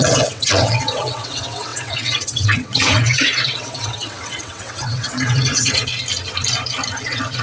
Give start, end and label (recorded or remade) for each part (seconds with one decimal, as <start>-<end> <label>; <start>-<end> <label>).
0.0-5.9 remade; 5.9-7.0 recorded; 7.0-7.4 remade

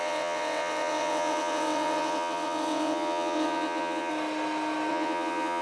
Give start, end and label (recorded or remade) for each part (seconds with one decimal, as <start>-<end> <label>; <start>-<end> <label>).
0.0-4.1 remade; 4.1-4.9 recorded; 4.9-5.6 remade